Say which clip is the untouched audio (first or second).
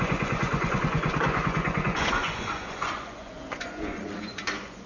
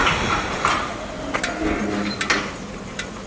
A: second